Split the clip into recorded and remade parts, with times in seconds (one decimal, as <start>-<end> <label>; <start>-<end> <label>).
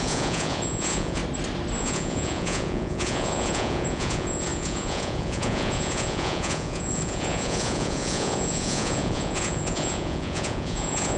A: 0.0-1.2 remade; 1.2-1.8 recorded; 1.8-11.2 remade